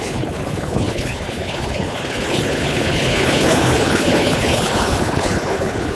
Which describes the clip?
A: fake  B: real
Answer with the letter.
A